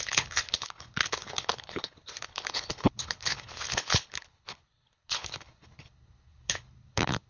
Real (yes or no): no